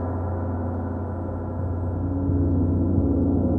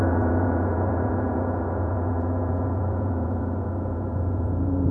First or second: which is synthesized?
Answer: second